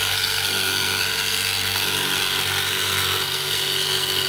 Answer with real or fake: fake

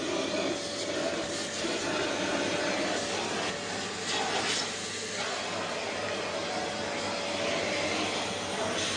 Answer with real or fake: real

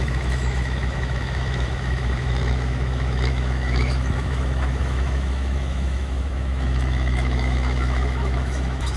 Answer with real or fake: fake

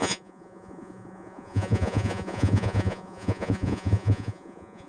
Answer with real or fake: fake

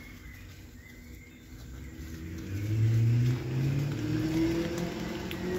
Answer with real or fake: real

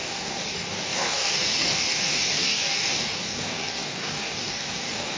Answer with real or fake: fake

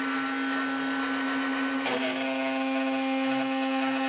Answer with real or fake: real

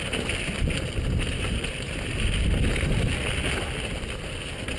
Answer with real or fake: real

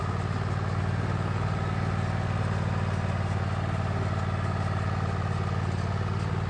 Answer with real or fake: real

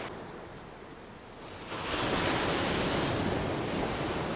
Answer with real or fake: real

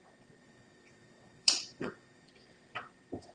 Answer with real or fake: fake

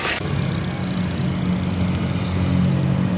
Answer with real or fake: real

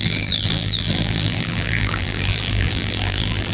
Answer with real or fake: fake